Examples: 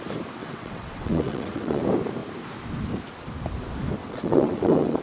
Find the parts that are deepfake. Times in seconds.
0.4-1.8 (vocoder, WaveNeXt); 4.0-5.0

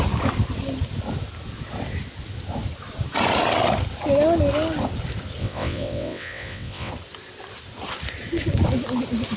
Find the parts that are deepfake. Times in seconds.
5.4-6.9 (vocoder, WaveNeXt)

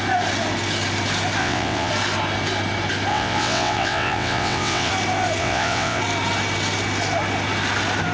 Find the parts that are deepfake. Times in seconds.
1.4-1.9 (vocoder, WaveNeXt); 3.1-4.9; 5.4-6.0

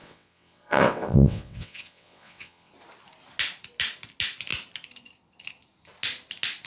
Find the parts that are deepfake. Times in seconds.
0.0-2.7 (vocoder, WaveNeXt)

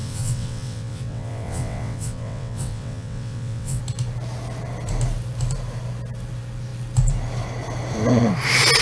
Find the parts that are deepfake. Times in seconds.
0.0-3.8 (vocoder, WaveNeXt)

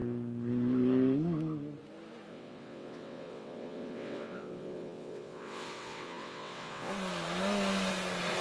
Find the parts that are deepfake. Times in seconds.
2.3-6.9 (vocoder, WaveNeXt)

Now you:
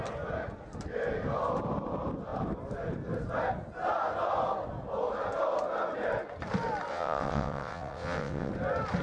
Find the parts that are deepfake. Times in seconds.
6.9-8.5 (vocoder, WaveNeXt)

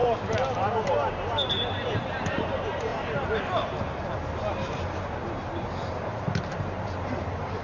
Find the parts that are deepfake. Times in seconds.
none